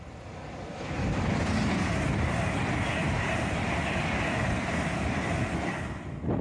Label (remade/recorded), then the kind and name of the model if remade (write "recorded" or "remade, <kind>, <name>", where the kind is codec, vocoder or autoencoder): recorded